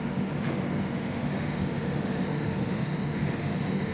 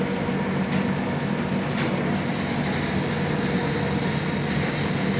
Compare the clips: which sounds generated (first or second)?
first